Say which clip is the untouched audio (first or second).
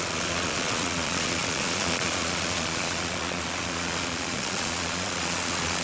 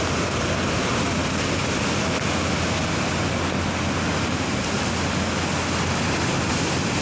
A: second